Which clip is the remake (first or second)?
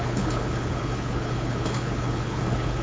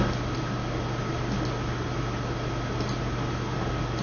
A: first